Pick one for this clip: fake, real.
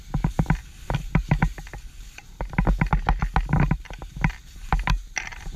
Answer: real